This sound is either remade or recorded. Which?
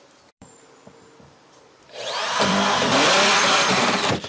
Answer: remade